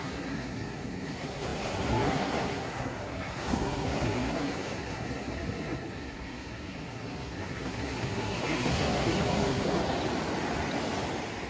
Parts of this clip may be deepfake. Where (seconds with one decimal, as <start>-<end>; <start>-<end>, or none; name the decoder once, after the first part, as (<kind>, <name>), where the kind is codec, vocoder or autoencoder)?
0.0-9.8 (codec, SNAC)